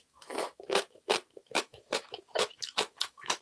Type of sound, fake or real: fake